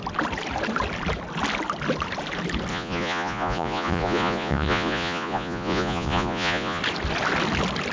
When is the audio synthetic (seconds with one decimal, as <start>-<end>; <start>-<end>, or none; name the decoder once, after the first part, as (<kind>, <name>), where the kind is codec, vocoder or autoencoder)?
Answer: 2.7-6.8 (vocoder, Vocos)